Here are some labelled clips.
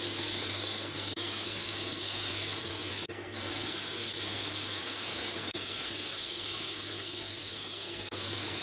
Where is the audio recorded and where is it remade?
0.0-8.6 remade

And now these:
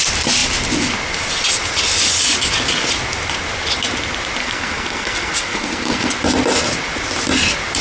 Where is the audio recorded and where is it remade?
0.0-4.4 recorded; 4.4-6.1 remade; 6.1-7.8 recorded

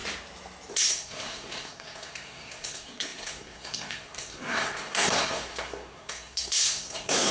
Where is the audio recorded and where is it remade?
0.0-0.7 recorded; 0.7-7.3 remade